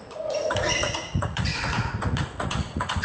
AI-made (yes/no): yes